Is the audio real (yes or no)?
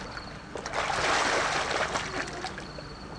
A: yes